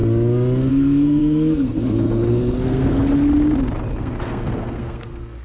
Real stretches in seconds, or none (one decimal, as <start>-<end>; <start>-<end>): 0.0-0.7; 2.9-4.0